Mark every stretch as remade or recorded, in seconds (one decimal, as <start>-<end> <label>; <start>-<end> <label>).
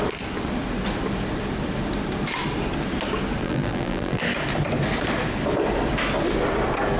0.0-3.4 recorded; 3.4-4.2 remade; 4.2-7.0 recorded